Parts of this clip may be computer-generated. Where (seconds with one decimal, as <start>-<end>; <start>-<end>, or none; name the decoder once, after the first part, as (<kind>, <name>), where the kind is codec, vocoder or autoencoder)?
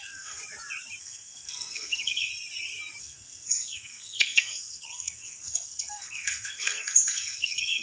0.0-0.4 (codec, SNAC); 1.0-2.3; 3.0-7.8